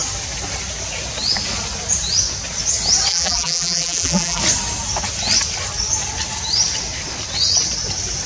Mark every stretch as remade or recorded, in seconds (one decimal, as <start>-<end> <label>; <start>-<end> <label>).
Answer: 0.0-3.1 recorded; 3.1-4.4 remade; 4.4-8.3 recorded